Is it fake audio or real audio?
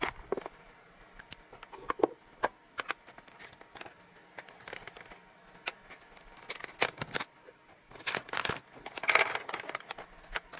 real